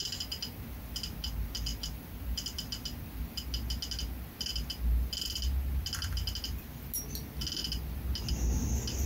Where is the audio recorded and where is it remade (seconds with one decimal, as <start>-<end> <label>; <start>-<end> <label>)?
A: 0.0-9.1 recorded